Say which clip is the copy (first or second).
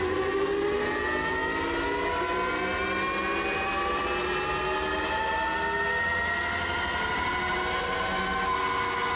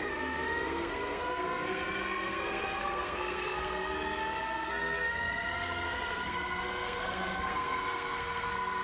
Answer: second